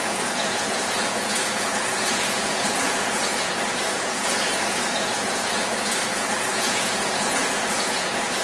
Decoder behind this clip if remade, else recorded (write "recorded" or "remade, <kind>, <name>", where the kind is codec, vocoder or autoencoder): remade, vocoder, Vocos